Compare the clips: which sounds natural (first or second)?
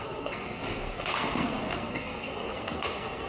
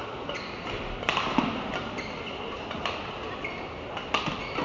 second